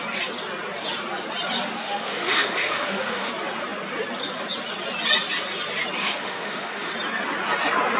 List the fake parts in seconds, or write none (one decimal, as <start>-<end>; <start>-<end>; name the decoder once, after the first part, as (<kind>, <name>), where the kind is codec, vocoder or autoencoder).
1.8-3.3 (autoencoder, DAC-VAE); 6.0-6.9